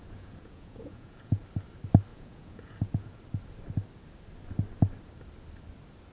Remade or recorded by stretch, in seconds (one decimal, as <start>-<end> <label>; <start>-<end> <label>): 0.0-1.4 remade; 1.4-2.1 recorded; 2.1-3.2 remade; 3.2-6.1 recorded